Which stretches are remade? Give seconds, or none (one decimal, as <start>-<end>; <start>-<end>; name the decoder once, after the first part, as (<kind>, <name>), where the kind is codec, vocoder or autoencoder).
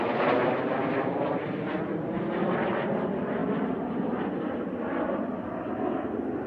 none